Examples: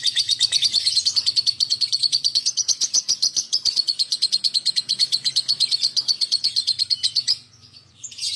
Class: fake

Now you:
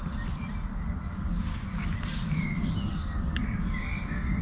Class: real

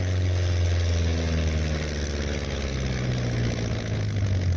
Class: real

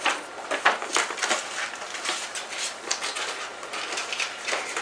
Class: real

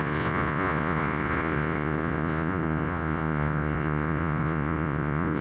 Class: fake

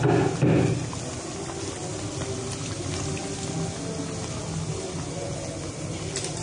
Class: real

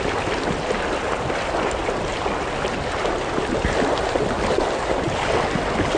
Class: real